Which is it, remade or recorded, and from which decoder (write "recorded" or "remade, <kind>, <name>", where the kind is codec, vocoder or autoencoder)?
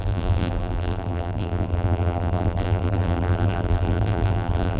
remade, vocoder, BigVGAN v2